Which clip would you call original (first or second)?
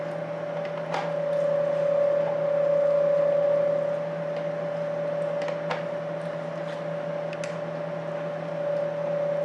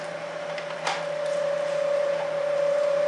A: first